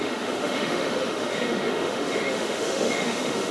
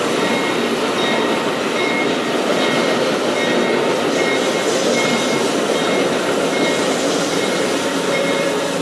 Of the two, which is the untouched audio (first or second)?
second